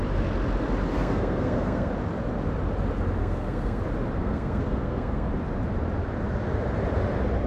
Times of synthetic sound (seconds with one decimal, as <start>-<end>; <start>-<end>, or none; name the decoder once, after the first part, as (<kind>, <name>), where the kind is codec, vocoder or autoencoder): 0.9-1.9 (codec, SNAC); 3.2-3.8; 4.2-5.3